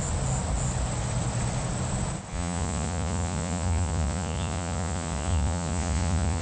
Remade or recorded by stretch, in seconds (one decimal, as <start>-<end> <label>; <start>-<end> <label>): 0.0-2.3 recorded; 2.3-6.4 remade